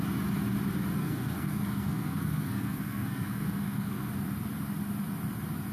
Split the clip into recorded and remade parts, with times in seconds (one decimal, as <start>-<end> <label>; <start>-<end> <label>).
0.0-1.0 recorded; 1.0-4.1 remade; 4.1-5.7 recorded